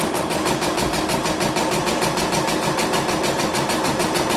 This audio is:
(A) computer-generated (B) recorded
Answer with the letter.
B